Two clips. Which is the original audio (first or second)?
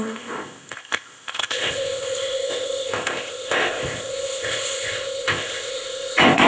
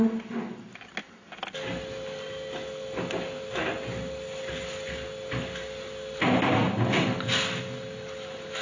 second